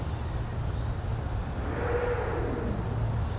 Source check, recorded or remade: recorded